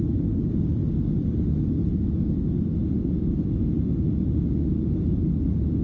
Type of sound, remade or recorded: recorded